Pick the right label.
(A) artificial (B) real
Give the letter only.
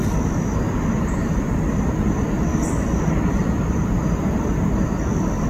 B